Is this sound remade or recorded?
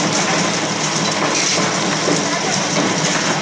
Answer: recorded